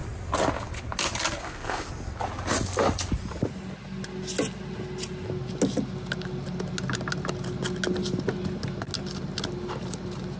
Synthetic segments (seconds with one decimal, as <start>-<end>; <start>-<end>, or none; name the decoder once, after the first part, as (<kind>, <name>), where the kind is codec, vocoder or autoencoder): 1.4-1.9 (codec, ZipCodec)